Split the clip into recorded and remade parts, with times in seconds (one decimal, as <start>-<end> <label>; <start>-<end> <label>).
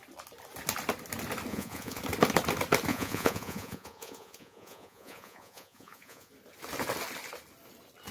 0.0-1.5 recorded; 1.5-2.0 remade; 2.0-2.9 recorded; 2.9-6.3 remade; 6.3-8.1 recorded